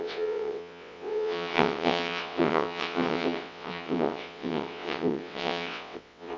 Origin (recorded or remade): remade